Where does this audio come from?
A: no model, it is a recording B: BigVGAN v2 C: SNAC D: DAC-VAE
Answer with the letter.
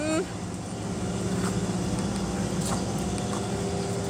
A